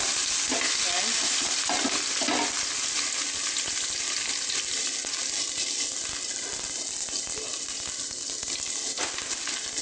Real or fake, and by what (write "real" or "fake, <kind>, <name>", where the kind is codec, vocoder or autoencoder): real